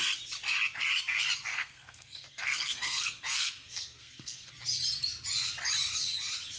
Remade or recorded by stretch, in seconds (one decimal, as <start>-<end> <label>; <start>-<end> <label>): 0.0-1.5 recorded; 1.5-4.5 remade; 4.5-6.6 recorded

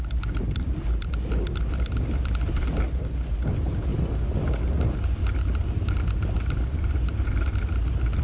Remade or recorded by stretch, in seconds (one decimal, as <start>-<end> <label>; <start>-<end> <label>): 0.0-8.2 recorded